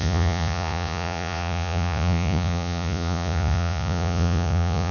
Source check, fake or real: fake